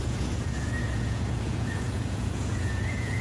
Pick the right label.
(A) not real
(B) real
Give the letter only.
A